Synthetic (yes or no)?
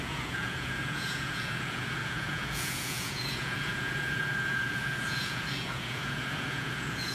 yes